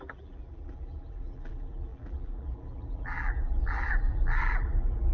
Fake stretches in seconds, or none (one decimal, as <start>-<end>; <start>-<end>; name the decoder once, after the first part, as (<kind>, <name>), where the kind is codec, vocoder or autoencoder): 0.0-5.1 (vocoder, BigVGAN v2)